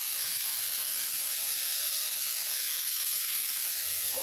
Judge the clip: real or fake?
fake